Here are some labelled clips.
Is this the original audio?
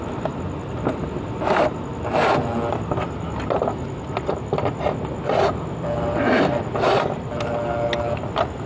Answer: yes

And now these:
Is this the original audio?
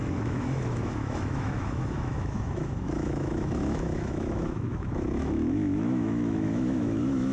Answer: no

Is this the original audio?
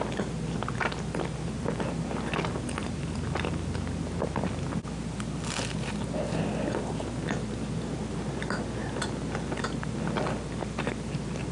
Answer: yes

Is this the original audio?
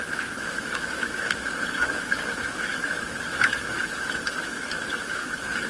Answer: no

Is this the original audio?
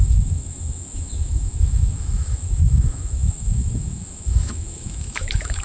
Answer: no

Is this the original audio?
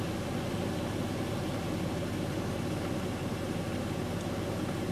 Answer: yes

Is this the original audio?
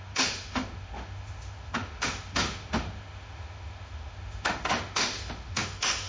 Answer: no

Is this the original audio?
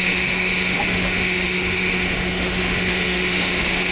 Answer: no